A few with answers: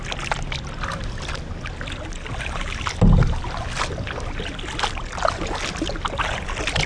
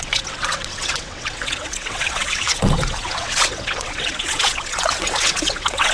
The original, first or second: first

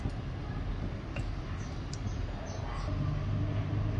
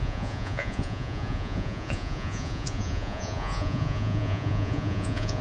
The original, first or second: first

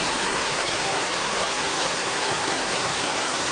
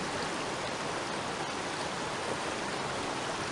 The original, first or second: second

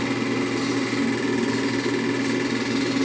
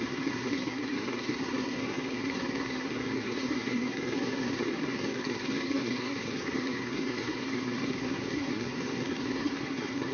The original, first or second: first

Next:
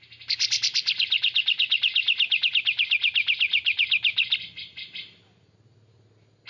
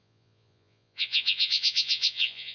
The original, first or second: first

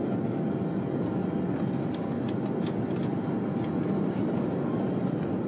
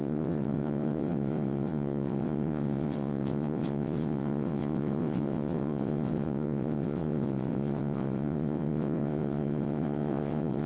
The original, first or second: first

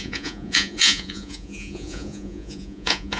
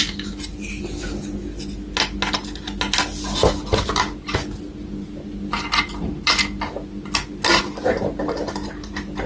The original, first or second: second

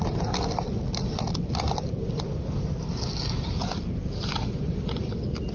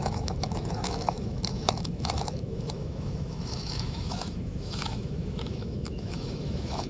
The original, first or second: first